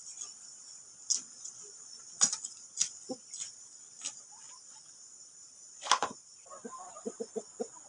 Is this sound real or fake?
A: real